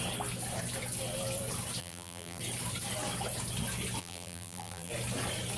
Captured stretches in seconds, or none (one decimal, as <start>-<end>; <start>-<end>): 0.0-1.8; 2.4-4.0; 4.9-5.6

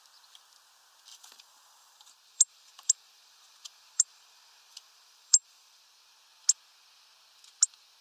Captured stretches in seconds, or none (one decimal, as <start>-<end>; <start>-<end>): 0.0-1.1; 5.8-8.0